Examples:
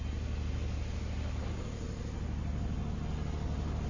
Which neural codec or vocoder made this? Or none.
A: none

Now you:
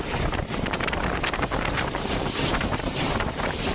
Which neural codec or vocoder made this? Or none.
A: vocoder, BigVGAN v2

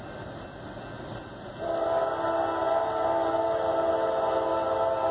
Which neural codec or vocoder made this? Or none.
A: none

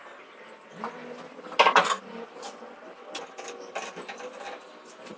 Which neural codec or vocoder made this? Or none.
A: none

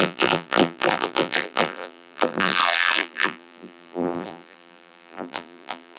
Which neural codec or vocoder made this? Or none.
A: vocoder, BigVGAN v2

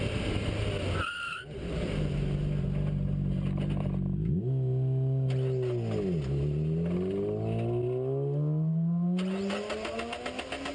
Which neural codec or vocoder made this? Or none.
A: none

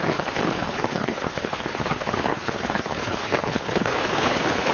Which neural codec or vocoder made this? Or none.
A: codec, HILCodec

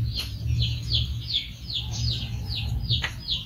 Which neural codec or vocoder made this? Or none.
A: none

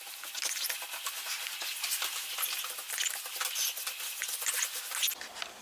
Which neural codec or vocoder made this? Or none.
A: none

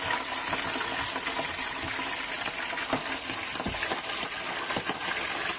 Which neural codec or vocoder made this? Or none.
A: none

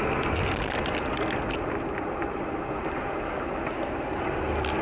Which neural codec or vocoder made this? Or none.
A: none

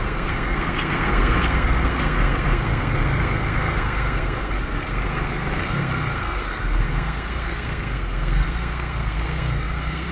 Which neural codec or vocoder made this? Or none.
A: codec, SNAC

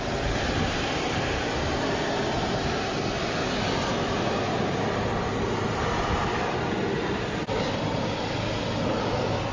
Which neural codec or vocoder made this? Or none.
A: none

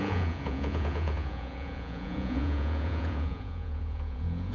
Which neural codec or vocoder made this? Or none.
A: vocoder, Vocos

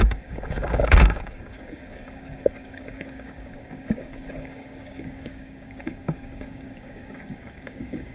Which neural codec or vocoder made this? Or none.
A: codec, DAC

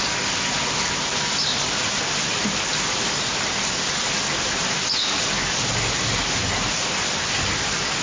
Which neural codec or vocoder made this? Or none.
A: none